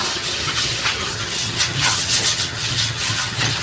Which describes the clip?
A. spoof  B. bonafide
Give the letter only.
A